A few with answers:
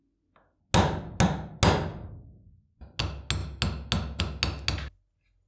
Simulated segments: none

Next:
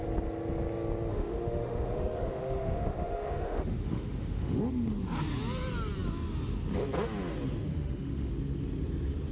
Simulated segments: 1.1-4.6 (autoencoder, DAC-VAE); 7.7-8.3